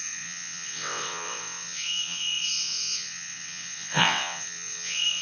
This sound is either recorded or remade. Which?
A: remade